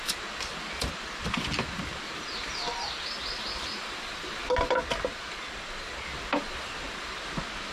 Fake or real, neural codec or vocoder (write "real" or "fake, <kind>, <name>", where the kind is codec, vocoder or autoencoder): real